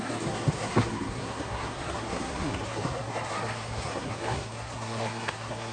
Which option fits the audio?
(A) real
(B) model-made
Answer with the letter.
B